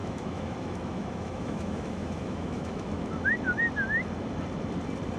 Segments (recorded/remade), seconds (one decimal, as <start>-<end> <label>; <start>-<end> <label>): 0.0-3.1 remade; 3.1-5.2 recorded